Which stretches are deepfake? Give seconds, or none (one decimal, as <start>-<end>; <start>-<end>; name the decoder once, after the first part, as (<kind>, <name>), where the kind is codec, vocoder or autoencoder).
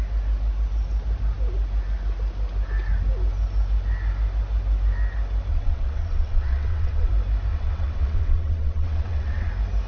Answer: 5.5-7.1 (vocoder, WaveNeXt); 7.5-9.5